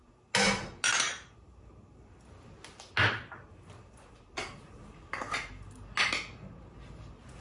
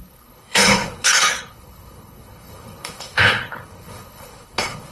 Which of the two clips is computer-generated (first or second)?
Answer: second